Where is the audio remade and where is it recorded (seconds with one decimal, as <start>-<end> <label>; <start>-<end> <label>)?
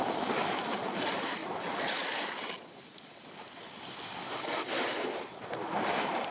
0.0-6.3 recorded